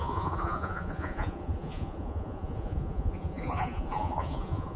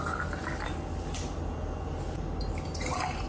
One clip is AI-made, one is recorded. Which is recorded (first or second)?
second